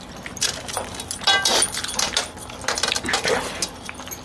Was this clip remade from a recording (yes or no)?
no